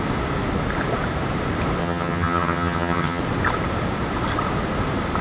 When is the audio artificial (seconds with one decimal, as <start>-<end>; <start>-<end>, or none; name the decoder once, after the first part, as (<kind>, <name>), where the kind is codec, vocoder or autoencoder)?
1.8-3.2 (vocoder, HiFi-GAN)